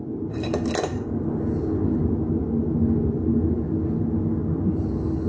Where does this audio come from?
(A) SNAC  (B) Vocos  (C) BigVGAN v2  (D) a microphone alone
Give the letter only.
D